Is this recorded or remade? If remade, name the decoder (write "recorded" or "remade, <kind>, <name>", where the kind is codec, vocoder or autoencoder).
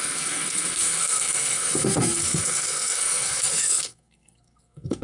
remade, codec, SNAC